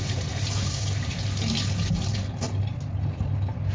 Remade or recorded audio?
recorded